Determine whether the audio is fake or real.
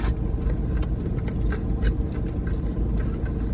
real